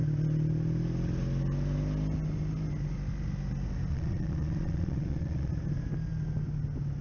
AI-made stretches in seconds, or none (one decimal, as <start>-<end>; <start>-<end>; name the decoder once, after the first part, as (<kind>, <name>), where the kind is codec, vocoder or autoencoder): 3.9-5.5 (vocoder, Vocos)